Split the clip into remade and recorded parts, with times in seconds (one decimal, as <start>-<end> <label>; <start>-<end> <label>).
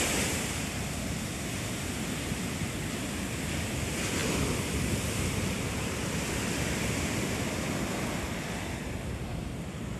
0.0-10.0 recorded